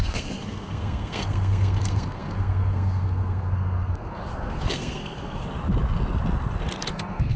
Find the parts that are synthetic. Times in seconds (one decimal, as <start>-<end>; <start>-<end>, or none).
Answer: 0.0-5.4; 6.9-7.4